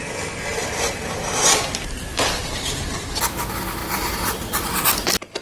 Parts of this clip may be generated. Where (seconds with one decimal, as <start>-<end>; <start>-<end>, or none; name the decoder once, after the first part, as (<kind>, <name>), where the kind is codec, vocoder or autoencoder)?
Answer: 0.5-1.2 (vocoder, BigVGAN v2); 2.1-2.9; 3.8-4.8